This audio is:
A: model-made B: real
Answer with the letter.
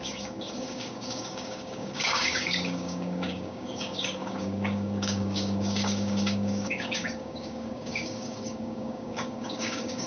A